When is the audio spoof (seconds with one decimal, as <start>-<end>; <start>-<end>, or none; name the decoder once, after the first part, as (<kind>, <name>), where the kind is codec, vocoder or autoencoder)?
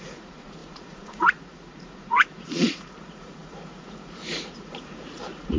0.0-5.6 (vocoder, Vocos)